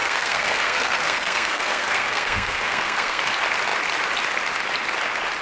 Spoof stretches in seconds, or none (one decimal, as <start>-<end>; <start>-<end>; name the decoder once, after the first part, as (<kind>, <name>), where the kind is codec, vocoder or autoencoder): 0.0-3.2 (codec, SNAC)